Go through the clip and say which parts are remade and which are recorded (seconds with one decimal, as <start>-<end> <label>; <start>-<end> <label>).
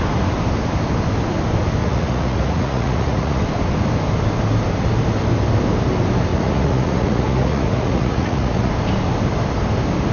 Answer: 0.0-1.8 recorded; 1.8-3.4 remade; 3.4-6.3 recorded; 6.3-8.7 remade; 8.7-10.1 recorded